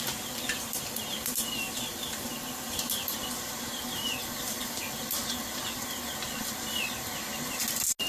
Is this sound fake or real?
real